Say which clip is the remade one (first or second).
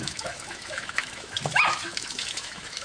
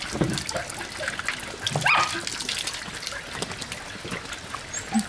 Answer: first